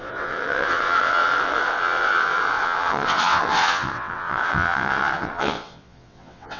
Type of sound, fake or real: fake